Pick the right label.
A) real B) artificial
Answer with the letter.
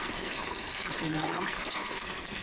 B